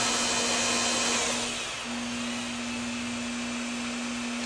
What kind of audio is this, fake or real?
real